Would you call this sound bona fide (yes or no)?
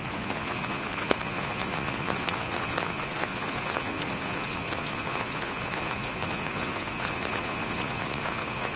no